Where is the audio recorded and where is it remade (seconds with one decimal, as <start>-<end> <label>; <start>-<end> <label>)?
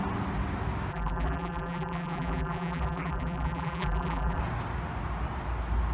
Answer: 0.0-0.9 recorded; 0.9-4.4 remade; 4.4-5.9 recorded